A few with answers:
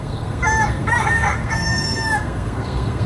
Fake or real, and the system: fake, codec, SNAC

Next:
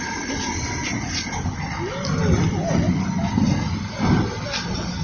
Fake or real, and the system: real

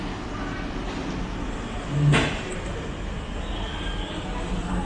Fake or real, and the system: real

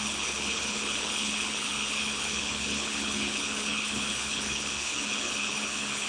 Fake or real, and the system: fake, codec, HILCodec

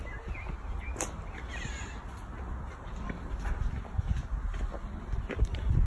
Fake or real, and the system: real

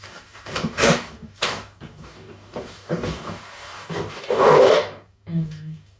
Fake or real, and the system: fake, codec, DAC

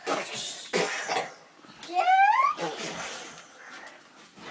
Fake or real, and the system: real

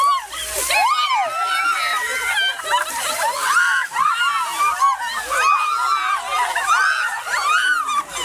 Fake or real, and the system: real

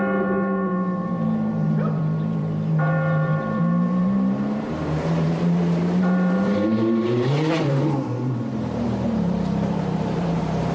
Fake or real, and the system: fake, vocoder, BigVGAN v2